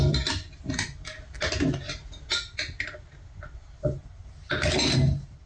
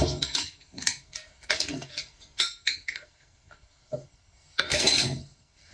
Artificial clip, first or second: second